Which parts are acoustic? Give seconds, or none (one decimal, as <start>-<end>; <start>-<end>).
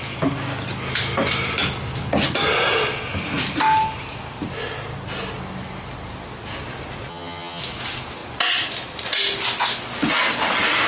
0.0-7.1; 7.6-10.9